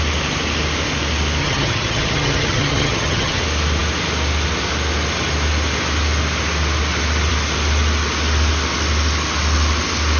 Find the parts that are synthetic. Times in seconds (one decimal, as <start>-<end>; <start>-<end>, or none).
1.4-3.4